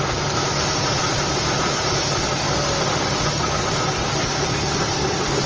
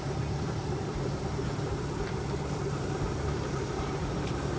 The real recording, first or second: first